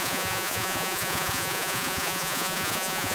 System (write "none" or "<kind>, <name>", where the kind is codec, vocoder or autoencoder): vocoder, Vocos